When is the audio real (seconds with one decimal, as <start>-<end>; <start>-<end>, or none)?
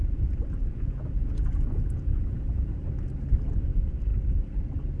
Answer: 2.7-5.0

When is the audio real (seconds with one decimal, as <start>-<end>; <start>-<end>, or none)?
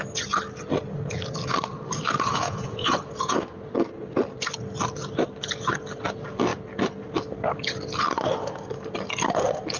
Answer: 0.0-2.3; 3.4-9.8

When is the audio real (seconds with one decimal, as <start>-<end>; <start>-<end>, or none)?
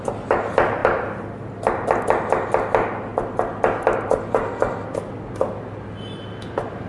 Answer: 0.0-6.9